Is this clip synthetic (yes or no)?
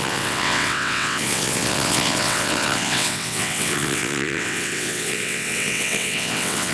yes